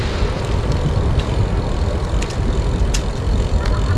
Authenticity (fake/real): real